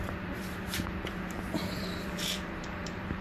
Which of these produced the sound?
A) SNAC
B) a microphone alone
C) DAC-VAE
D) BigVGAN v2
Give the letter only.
D